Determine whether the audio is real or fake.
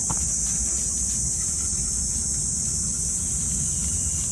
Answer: real